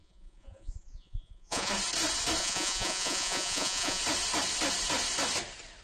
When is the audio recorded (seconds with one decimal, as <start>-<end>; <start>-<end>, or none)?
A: 1.7-2.4; 4.0-5.8